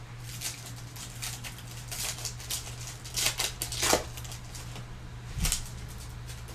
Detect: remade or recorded recorded